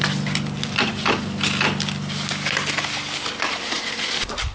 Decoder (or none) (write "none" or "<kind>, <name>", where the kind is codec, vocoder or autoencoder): none